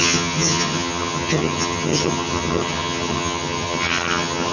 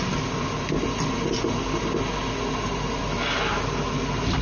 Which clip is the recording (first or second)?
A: second